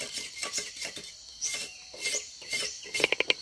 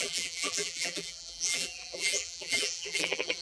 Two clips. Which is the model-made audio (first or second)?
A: second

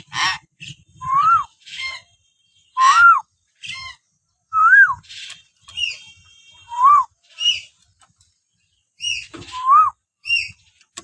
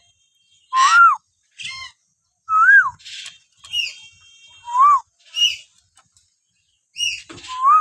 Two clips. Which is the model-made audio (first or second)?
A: first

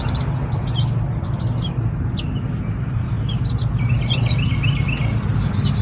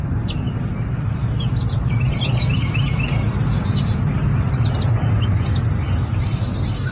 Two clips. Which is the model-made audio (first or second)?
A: second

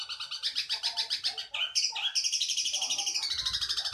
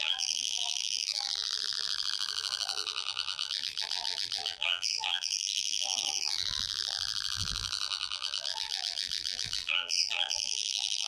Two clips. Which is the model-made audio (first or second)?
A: second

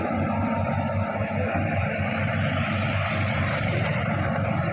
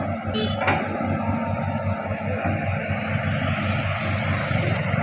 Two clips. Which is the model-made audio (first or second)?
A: first